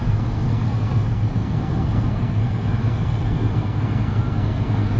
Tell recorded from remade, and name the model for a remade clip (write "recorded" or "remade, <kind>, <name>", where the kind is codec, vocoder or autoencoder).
remade, codec, SNAC